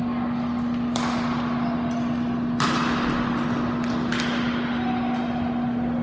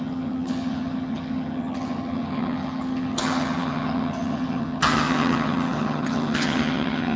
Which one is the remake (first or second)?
second